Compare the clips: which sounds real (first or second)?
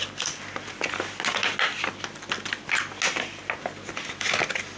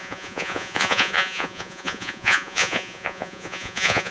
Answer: first